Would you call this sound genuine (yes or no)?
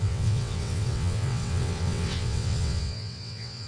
no